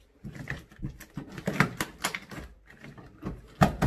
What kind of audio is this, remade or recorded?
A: recorded